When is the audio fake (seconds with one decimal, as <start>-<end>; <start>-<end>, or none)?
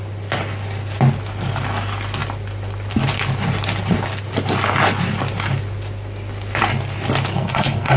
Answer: 7.3-8.0